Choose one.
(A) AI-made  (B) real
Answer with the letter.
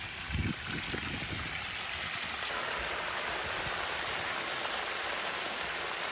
B